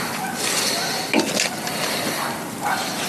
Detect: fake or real real